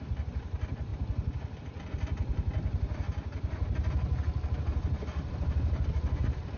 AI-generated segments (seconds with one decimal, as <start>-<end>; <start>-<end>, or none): none